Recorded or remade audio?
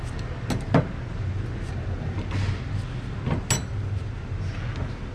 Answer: recorded